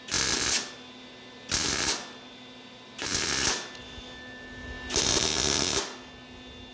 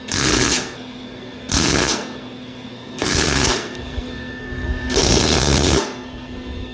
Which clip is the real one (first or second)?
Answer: first